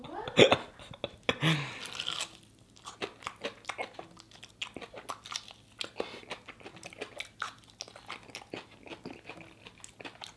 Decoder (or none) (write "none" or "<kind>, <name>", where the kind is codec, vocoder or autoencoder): none